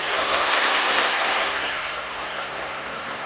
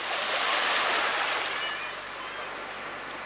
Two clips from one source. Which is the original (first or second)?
second